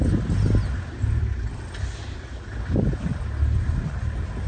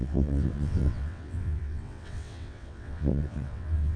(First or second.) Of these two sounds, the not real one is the second